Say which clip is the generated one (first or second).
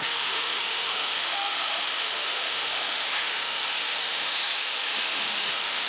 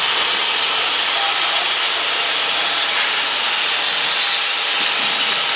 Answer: first